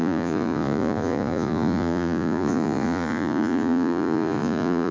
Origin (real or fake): fake